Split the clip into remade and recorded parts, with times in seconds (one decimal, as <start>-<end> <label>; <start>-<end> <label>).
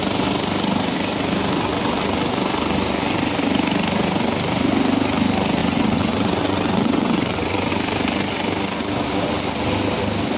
0.0-5.6 recorded; 5.6-7.7 remade; 7.7-10.4 recorded